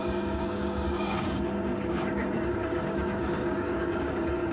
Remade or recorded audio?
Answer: remade